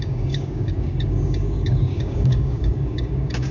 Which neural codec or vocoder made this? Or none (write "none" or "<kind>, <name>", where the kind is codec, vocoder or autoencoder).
codec, DAC